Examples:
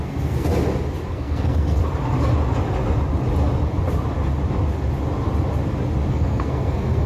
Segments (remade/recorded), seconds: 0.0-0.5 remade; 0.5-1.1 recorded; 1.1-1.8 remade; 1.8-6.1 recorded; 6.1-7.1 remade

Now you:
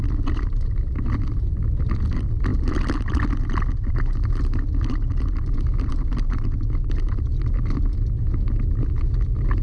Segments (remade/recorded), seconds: 0.0-9.6 recorded

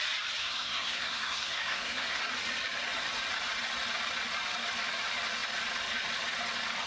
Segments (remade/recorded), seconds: 0.0-0.4 recorded; 0.4-2.2 remade; 2.2-6.9 recorded

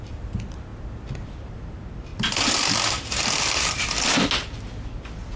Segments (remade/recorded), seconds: 0.0-5.4 recorded

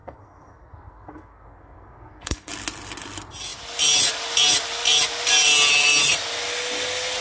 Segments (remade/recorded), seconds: 0.0-2.5 remade; 2.5-7.2 recorded

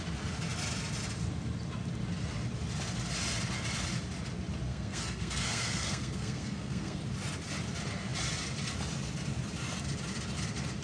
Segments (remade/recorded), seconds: 0.0-4.7 recorded; 4.7-7.0 remade; 7.0-10.8 recorded